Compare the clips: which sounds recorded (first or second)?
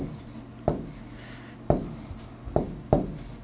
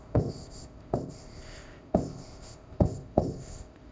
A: first